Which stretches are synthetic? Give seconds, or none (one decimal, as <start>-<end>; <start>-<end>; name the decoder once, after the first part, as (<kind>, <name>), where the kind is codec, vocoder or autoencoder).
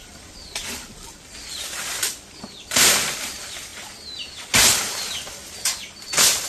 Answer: 0.0-3.7 (vocoder, BigVGAN v2); 6.1-6.5